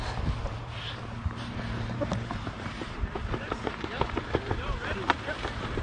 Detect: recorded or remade remade